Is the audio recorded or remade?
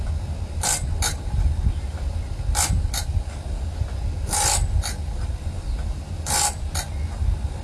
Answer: recorded